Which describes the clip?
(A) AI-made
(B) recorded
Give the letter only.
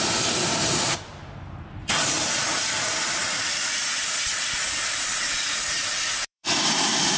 A